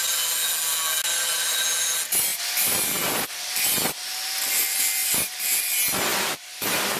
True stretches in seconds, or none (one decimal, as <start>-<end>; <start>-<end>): 0.0-2.3; 4.1-5.0; 5.6-6.1